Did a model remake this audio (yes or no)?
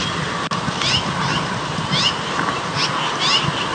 no